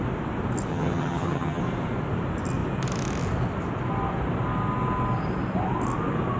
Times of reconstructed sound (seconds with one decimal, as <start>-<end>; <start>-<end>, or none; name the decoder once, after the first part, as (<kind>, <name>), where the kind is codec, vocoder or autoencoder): 0.7-1.6 (vocoder, HiFi-GAN)